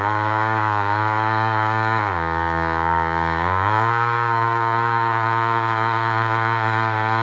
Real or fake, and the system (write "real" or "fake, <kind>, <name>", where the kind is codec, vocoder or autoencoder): fake, codec, DAC